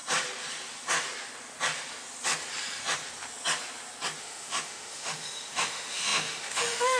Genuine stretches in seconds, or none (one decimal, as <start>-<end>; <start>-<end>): 0.0-4.2